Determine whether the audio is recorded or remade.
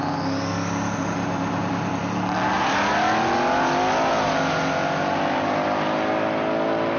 recorded